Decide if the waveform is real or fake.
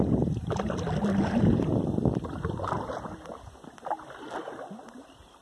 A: real